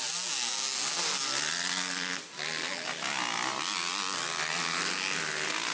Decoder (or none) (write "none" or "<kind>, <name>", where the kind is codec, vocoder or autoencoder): none